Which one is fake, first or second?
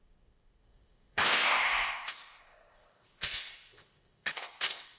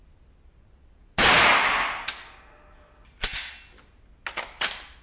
first